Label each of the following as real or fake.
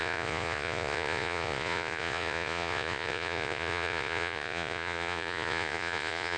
fake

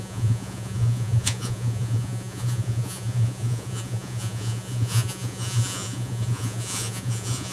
fake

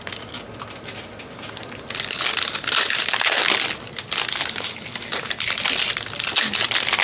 real